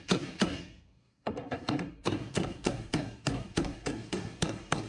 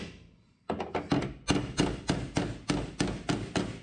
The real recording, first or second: second